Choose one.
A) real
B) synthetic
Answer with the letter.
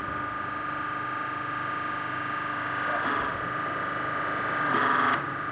A